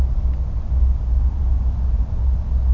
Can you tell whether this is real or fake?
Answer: real